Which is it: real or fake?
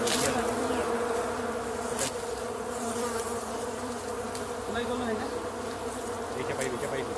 real